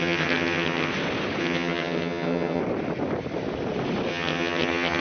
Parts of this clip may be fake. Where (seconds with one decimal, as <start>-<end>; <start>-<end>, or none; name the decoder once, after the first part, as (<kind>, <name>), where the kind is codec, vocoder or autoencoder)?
0.0-0.9 (vocoder, HiFi-GAN); 1.4-2.6; 4.1-5.0